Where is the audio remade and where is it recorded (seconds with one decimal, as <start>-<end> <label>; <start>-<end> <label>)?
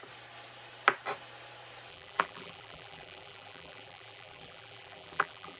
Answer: 0.0-1.9 recorded; 1.9-5.6 remade